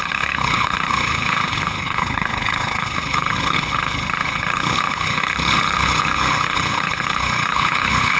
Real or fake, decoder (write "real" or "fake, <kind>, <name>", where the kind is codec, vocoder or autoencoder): fake, codec, HILCodec